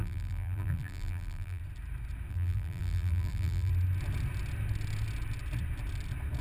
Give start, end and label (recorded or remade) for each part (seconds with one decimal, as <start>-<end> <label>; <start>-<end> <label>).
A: 0.0-1.6 remade; 1.6-2.3 recorded; 2.3-3.7 remade; 3.7-6.4 recorded